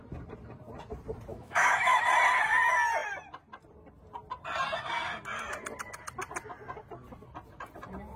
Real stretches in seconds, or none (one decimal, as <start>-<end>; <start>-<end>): 0.0-1.3; 2.0-8.2